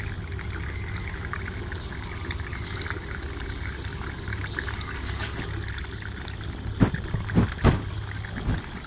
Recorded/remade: recorded